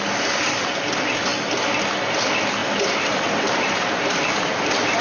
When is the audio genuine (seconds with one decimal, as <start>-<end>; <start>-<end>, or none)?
0.0-2.6; 4.2-5.0